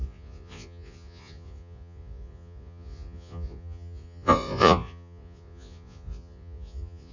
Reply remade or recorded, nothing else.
remade